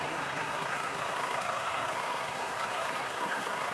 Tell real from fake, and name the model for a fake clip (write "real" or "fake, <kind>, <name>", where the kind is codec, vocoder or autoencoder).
fake, codec, SNAC